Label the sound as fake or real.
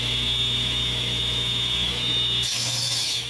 fake